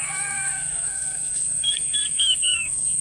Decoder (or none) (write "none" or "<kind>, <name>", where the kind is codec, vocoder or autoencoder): codec, SNAC